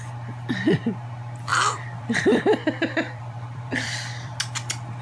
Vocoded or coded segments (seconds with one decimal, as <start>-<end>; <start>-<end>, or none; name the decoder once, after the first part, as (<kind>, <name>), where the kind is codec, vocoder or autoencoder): 1.5-4.4 (vocoder, BigVGAN v2)